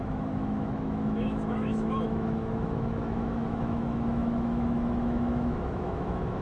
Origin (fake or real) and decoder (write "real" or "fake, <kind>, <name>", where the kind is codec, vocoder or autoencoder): fake, autoencoder, DAC-VAE